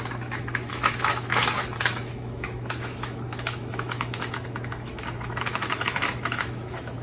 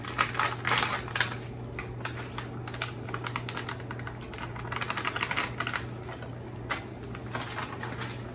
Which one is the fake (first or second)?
first